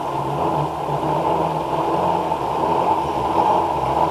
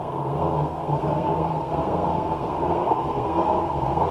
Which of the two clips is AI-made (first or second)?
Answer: second